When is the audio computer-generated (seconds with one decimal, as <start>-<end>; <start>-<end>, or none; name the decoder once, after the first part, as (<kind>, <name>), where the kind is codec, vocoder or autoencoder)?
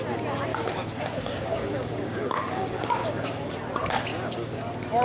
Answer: 0.5-3.5 (codec, DAC); 4.1-4.6